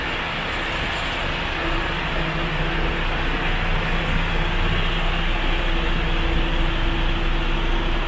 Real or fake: real